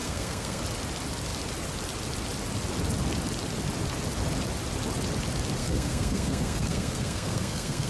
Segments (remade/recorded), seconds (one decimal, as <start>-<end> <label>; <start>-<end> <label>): 0.0-0.6 remade; 0.6-5.6 recorded; 5.6-7.9 remade